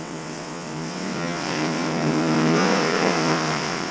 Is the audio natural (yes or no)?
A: no